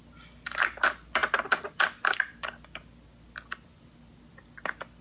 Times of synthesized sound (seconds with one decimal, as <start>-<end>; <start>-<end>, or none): none